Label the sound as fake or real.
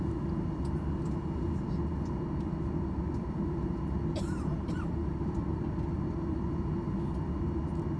real